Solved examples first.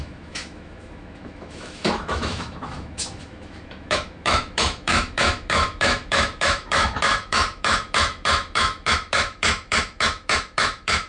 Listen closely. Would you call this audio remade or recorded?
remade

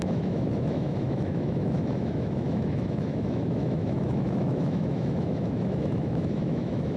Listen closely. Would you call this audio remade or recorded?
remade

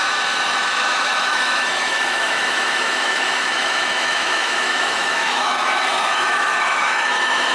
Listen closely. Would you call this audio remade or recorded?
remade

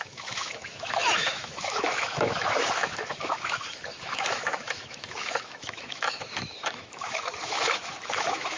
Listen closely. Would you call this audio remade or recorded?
remade